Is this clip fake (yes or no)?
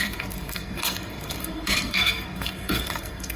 yes